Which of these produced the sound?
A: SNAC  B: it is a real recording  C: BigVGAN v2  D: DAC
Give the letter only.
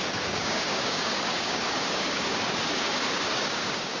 D